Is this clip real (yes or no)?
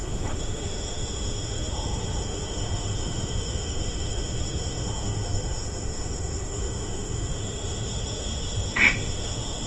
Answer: no